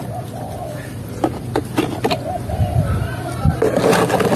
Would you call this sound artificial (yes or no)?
no